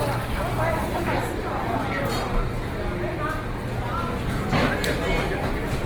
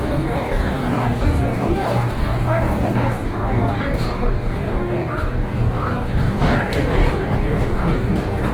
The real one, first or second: first